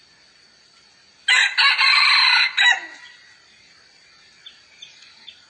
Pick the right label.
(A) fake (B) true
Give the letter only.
B